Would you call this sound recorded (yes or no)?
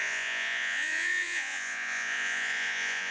no